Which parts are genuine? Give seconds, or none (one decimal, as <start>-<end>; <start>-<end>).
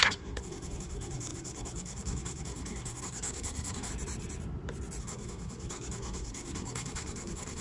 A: 3.9-5.0